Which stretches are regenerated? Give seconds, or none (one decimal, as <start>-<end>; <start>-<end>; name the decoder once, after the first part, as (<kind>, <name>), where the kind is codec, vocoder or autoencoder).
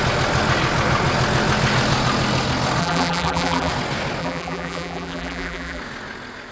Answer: 2.8-3.7 (vocoder, BigVGAN v2); 4.2-5.8